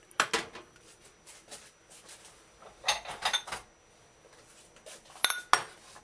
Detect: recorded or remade recorded